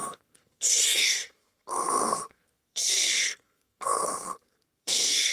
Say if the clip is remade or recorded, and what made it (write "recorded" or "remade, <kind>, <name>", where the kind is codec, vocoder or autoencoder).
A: remade, codec, SNAC